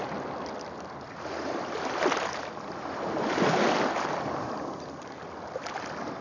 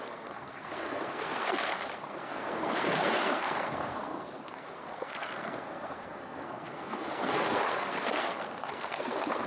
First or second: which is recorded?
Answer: first